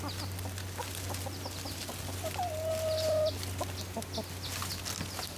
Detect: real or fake real